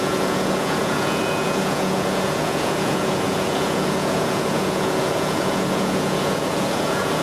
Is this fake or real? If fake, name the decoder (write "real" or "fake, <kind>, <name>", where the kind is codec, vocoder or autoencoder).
fake, vocoder, Vocos